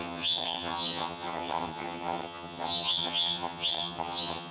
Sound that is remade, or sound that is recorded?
remade